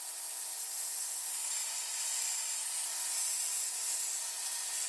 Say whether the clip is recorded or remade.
recorded